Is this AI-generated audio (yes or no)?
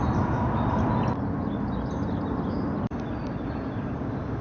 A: no